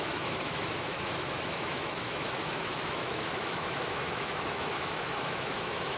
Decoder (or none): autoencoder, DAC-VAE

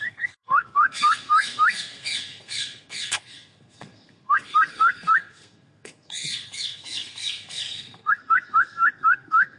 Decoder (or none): codec, SNAC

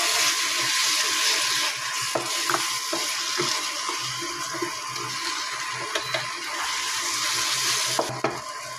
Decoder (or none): none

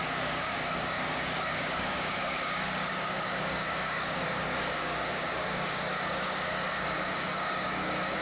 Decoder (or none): codec, DAC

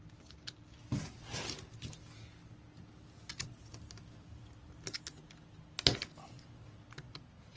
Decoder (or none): none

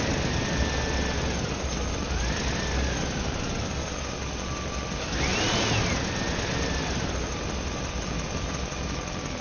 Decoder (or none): none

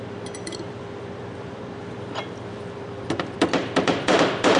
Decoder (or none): vocoder, BigVGAN v2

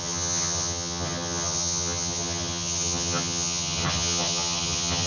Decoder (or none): vocoder, HiFi-GAN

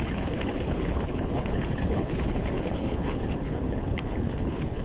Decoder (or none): codec, HILCodec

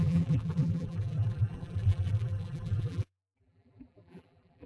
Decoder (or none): vocoder, BigVGAN v2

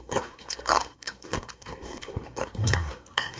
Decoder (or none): codec, SNAC